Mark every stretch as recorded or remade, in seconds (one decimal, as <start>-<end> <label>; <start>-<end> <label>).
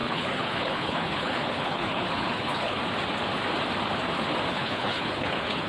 0.0-2.8 remade; 2.8-4.5 recorded; 4.5-5.7 remade